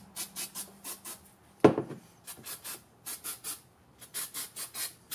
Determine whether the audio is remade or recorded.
recorded